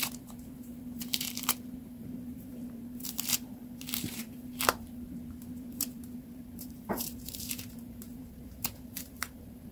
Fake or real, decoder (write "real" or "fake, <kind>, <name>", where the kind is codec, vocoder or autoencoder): fake, vocoder, BigVGAN v2